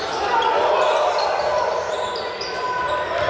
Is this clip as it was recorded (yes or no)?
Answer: yes